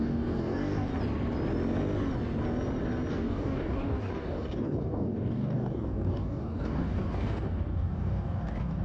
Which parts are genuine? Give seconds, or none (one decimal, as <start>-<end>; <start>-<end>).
0.9-3.1